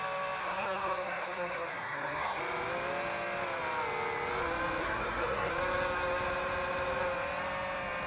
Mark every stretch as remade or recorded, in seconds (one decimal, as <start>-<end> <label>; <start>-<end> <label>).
0.0-0.4 recorded; 0.4-2.4 remade; 2.4-4.8 recorded; 4.8-5.5 remade; 5.5-8.1 recorded